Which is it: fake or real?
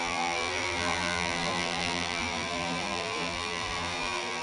fake